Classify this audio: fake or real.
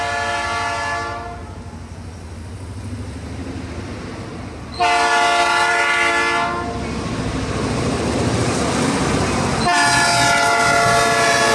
real